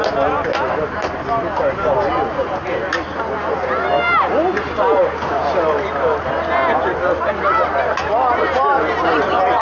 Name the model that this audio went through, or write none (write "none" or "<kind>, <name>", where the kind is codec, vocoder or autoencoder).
none